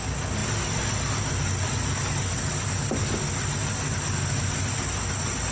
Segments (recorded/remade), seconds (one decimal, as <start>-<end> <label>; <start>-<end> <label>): 0.0-5.5 recorded